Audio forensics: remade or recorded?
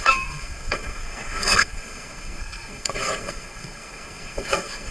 remade